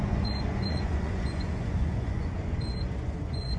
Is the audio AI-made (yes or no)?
yes